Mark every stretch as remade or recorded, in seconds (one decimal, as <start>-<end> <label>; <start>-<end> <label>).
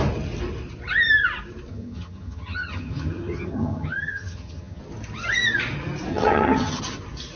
0.0-1.7 recorded; 1.7-4.8 remade; 4.8-6.1 recorded; 6.1-6.8 remade; 6.8-7.4 recorded